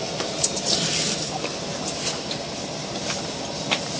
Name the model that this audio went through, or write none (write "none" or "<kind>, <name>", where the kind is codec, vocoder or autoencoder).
none